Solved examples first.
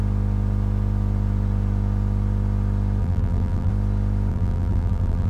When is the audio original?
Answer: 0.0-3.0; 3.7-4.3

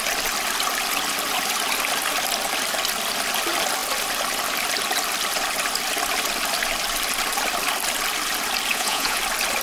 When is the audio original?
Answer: 0.0-8.7; 9.2-9.6

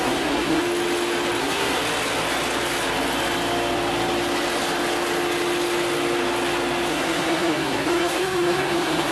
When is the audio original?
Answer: 0.6-1.4; 1.8-6.9

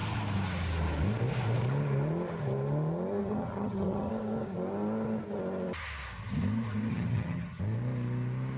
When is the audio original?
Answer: 0.0-3.2; 4.1-6.9; 7.6-8.6

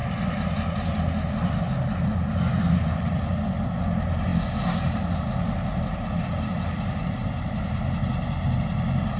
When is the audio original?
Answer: 0.0-9.2

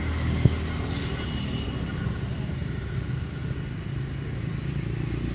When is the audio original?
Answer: 0.0-5.3

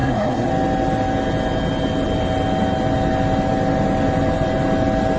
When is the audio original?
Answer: 0.5-5.2

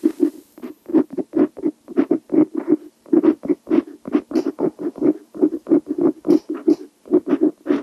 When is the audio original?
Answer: 0.0-7.8